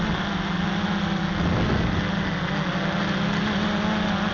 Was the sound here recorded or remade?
recorded